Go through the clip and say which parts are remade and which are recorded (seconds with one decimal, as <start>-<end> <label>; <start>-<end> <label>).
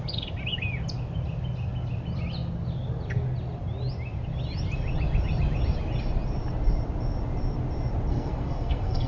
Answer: 0.0-8.1 recorded; 8.1-9.1 remade